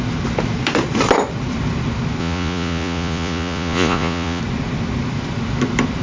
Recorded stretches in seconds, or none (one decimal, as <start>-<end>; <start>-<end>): 0.0-2.2; 4.4-6.0